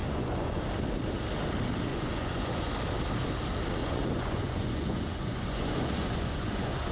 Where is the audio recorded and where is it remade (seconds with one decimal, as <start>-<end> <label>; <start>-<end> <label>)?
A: 0.0-0.6 remade; 0.6-1.9 recorded; 1.9-2.7 remade; 2.7-3.8 recorded; 3.8-6.9 remade